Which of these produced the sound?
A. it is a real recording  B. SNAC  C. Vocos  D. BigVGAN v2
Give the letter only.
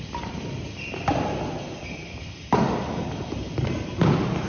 A